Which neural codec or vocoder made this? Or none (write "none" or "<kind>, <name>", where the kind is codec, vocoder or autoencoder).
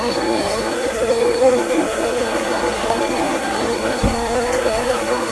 codec, SNAC